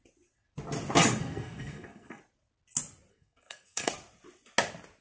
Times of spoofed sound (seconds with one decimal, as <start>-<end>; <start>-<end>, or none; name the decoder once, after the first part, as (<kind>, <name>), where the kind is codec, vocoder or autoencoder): 1.2-2.2 (codec, SNAC); 3.1-3.9